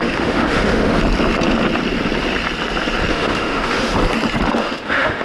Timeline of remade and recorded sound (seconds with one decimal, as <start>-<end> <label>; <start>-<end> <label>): 0.0-1.0 remade; 1.0-3.1 recorded; 3.1-3.9 remade; 3.9-4.5 recorded; 4.5-5.2 remade